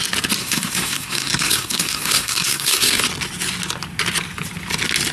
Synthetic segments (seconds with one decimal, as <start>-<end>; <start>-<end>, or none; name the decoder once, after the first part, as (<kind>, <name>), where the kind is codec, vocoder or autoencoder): 0.4-3.0 (codec, SNAC)